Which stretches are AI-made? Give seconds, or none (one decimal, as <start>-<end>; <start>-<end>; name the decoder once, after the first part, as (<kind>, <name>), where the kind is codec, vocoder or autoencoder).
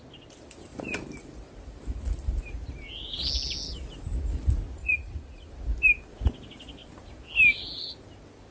4.8-5.5 (vocoder, Vocos)